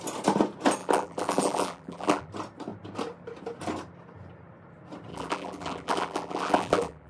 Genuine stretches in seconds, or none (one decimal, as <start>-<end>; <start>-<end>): 0.0-0.8; 2.3-5.1